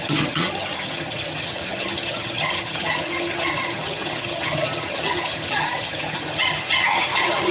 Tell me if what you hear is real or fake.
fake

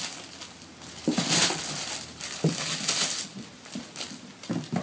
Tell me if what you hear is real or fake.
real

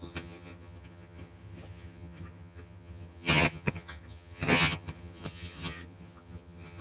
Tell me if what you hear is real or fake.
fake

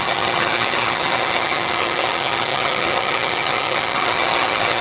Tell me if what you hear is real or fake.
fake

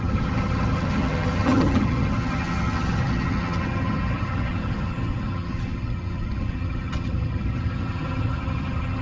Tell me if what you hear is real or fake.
fake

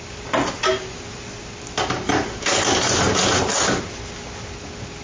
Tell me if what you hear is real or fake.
real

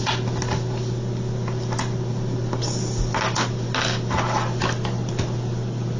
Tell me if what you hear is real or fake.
real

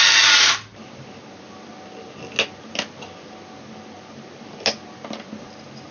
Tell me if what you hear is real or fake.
real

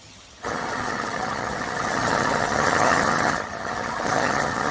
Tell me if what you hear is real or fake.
fake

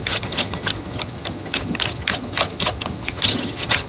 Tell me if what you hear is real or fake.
fake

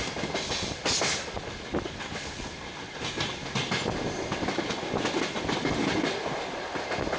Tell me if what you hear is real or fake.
real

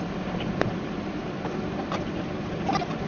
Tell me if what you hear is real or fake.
real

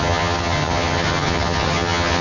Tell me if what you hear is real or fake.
fake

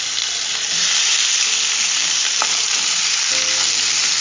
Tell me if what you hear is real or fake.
real